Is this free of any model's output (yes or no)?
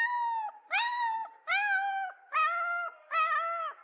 yes